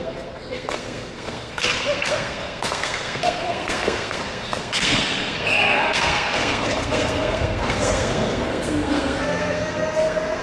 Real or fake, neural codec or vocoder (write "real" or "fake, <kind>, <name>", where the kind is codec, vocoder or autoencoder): fake, codec, SNAC